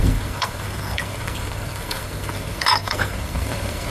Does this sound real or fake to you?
fake